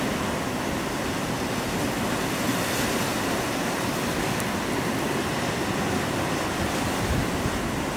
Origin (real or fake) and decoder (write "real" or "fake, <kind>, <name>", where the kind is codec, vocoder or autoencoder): real